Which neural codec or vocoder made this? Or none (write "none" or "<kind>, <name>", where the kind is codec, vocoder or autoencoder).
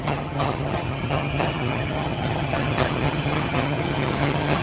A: vocoder, HiFi-GAN